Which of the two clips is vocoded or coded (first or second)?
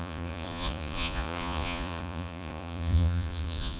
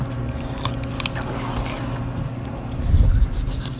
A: first